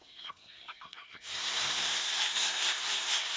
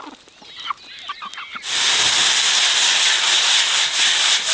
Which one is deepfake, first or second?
first